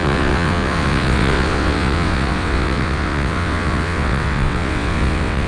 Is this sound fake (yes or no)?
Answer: yes